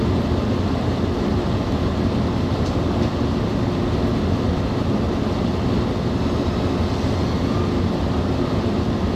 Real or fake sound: real